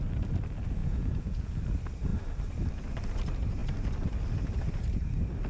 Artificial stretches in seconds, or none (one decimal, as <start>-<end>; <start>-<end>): 0.8-1.5